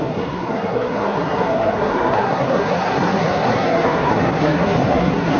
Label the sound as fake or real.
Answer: fake